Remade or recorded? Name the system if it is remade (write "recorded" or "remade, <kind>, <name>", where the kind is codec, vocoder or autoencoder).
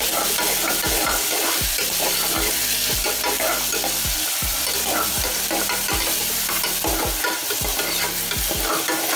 remade, vocoder, BigVGAN v2